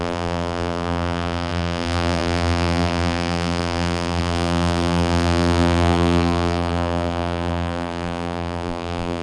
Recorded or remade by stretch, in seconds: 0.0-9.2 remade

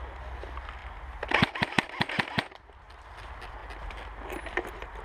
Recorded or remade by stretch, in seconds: 0.0-0.8 recorded; 0.8-2.5 remade; 2.5-5.0 recorded

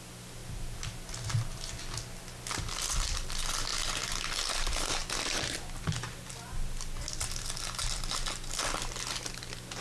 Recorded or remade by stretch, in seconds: 0.0-9.8 recorded

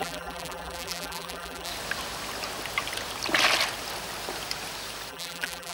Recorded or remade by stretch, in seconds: 0.0-1.7 remade; 1.7-5.1 recorded; 5.1-5.7 remade

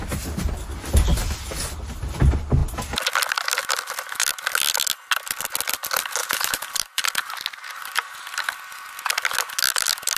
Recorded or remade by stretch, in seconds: 0.0-6.2 recorded; 6.2-7.1 remade; 7.1-10.2 recorded

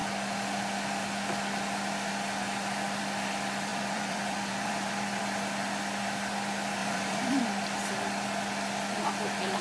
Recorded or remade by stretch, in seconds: 0.0-3.7 recorded; 3.7-5.2 remade; 5.2-6.8 recorded; 6.8-7.4 remade; 7.4-9.6 recorded